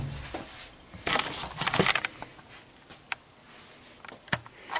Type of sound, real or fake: real